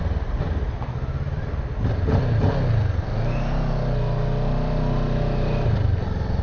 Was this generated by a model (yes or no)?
no